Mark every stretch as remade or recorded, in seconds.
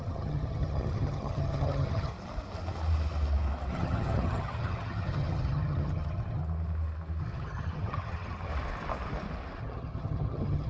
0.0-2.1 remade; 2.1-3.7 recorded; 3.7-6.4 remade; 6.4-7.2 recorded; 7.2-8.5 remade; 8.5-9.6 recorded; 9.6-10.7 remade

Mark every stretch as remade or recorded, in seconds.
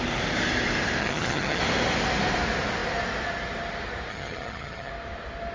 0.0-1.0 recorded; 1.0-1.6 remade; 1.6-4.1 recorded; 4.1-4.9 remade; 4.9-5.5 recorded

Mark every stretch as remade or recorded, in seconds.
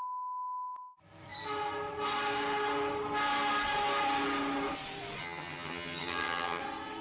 0.0-5.2 recorded; 5.2-6.6 remade; 6.6-7.0 recorded